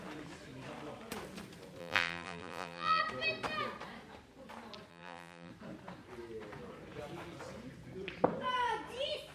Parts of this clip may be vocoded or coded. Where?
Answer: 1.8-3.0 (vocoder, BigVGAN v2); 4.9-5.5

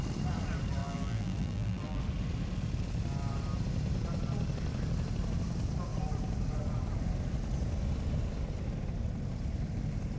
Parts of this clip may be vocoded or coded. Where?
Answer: 0.8-2.0 (vocoder, BigVGAN v2)